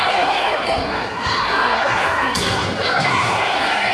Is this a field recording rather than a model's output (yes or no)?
no